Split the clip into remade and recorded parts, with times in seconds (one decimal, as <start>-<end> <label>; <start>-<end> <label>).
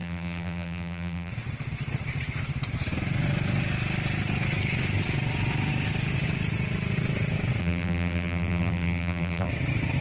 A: 0.0-1.3 remade; 1.3-7.6 recorded; 7.6-9.5 remade; 9.5-10.0 recorded